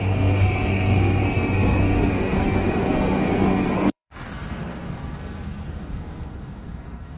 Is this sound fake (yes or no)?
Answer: yes